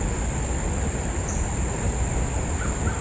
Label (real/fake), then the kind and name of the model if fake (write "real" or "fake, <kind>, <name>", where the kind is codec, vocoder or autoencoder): fake, vocoder, BigVGAN v2